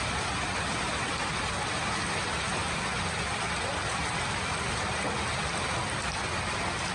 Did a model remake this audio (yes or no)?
no